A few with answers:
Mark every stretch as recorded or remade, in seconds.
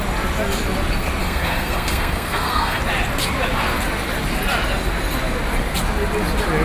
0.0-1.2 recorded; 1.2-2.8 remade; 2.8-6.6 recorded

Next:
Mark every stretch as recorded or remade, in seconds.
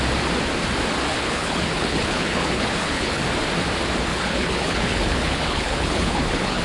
0.0-1.1 recorded; 1.1-3.2 remade; 3.2-4.1 recorded; 4.1-6.6 remade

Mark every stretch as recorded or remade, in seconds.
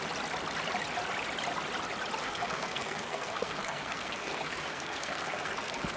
0.0-2.2 recorded; 2.2-6.0 remade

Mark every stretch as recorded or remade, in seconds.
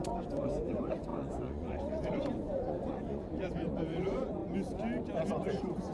0.0-4.4 remade; 4.4-5.3 recorded; 5.3-5.9 remade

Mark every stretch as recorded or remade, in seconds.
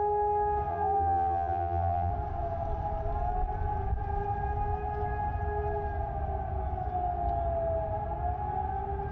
0.0-0.7 recorded; 0.7-2.1 remade; 2.1-9.1 recorded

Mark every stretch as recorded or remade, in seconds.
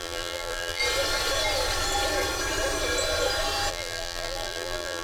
0.0-0.8 remade; 0.8-3.7 recorded; 3.7-5.0 remade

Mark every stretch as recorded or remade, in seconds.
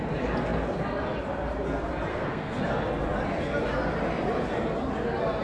0.0-2.1 recorded; 2.1-2.6 remade; 2.6-5.4 recorded